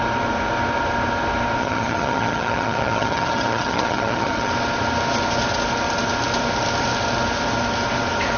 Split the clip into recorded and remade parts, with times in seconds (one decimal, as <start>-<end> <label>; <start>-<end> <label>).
0.0-1.6 recorded; 1.6-4.5 remade; 4.5-8.4 recorded